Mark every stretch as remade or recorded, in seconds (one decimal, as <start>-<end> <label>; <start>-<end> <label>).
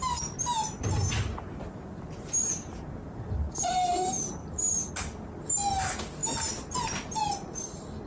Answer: 0.0-4.4 recorded; 4.4-4.9 remade; 4.9-8.1 recorded